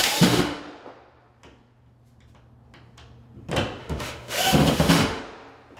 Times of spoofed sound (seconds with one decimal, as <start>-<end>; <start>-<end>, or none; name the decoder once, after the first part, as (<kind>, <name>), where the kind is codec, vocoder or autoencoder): 0.0-0.6 (autoencoder, DAC-VAE); 3.8-5.2